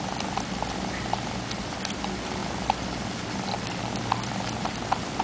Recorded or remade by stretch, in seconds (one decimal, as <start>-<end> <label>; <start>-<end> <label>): 0.0-5.2 recorded